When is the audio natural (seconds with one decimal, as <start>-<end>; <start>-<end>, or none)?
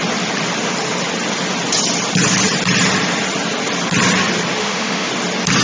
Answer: 0.0-4.6; 5.1-5.6